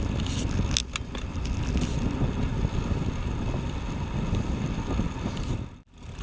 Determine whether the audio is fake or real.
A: real